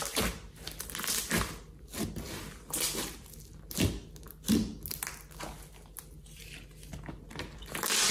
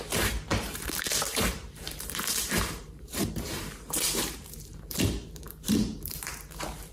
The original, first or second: first